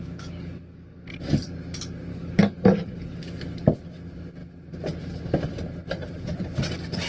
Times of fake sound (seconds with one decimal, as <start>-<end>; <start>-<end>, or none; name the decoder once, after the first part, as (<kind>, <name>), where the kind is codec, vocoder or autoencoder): 0.0-1.0 (codec, DAC); 2.1-3.2